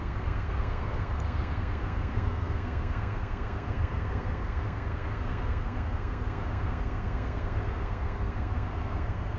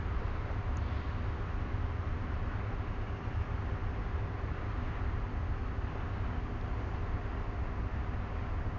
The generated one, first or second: first